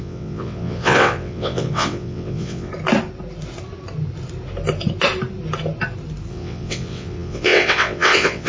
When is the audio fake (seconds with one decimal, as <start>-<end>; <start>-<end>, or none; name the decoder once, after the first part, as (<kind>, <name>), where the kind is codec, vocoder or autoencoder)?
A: 0.0-2.7 (vocoder, WaveNeXt); 6.3-8.5